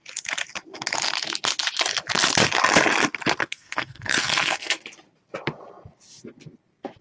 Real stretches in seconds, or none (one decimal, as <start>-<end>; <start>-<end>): 0.0-3.4; 4.8-7.0